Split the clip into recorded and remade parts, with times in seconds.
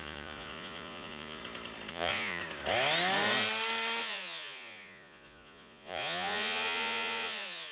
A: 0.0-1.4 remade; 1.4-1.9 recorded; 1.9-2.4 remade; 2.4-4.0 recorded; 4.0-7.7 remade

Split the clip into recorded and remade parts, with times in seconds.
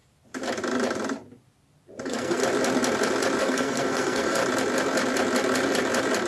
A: 0.0-2.0 recorded; 2.0-2.4 remade; 2.4-3.4 recorded; 3.4-4.4 remade; 4.4-6.3 recorded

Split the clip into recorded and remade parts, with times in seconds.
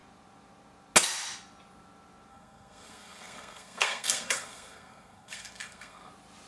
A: 0.0-2.3 recorded; 2.3-6.1 remade; 6.1-6.5 recorded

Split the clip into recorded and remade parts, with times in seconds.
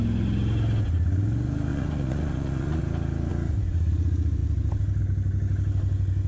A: 0.0-1.7 recorded; 1.7-2.8 remade; 2.8-6.3 recorded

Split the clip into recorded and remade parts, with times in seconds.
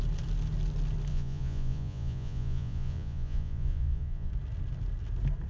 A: 0.0-1.1 recorded; 1.1-4.3 remade; 4.3-5.5 recorded